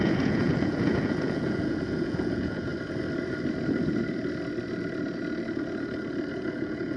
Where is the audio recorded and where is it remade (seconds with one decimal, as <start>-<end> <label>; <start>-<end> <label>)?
0.0-2.7 remade; 2.7-6.3 recorded; 6.3-7.0 remade

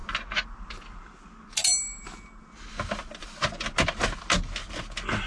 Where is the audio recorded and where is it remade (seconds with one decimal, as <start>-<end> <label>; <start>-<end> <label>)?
0.0-5.3 recorded

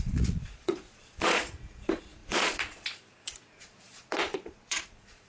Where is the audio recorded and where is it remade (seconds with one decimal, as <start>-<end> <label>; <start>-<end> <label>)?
0.0-5.3 remade